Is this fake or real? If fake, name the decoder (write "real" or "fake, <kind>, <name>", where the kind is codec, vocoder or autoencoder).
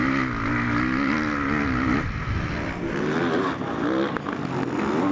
real